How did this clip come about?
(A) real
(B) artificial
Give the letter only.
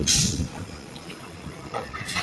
B